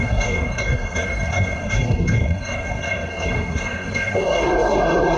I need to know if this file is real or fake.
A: fake